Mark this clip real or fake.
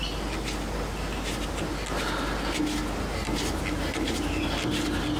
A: real